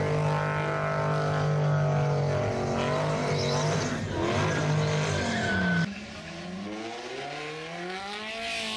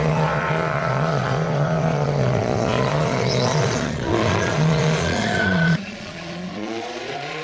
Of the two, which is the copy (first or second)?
second